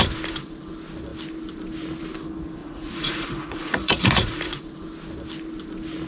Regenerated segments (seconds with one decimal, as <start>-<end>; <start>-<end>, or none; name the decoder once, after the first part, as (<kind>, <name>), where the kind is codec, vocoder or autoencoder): 2.6-4.6 (vocoder, Vocos)

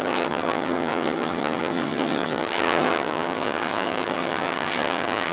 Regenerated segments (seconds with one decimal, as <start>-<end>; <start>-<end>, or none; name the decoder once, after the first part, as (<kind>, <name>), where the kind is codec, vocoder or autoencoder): 0.0-5.3 (vocoder, HiFi-GAN)

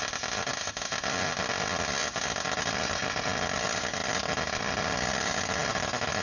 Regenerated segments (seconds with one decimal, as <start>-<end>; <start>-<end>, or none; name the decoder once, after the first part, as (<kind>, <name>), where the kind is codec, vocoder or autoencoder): none

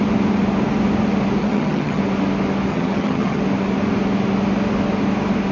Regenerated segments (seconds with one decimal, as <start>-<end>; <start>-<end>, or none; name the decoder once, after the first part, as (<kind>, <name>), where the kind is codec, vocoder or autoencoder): 1.4-2.0 (vocoder, HiFi-GAN); 2.7-3.4

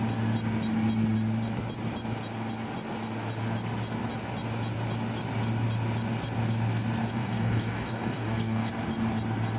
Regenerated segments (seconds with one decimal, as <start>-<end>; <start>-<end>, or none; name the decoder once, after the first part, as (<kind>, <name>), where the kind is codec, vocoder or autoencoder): 7.0-8.7 (codec, DAC)